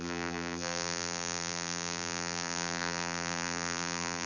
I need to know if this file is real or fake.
fake